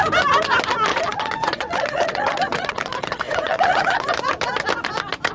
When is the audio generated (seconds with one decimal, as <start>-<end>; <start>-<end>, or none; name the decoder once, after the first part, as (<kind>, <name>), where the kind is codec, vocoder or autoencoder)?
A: 0.9-4.1 (vocoder, WaveNeXt)